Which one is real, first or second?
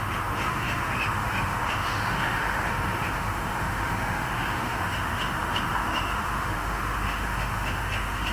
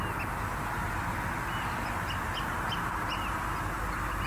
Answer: second